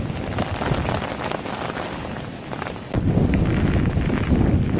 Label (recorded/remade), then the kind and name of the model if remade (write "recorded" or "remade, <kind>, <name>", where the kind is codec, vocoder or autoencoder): recorded